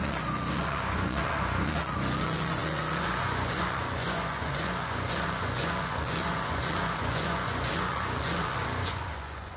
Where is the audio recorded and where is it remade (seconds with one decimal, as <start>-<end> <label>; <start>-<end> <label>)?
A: 0.0-9.6 remade